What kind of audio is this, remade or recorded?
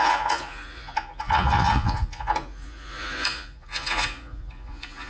remade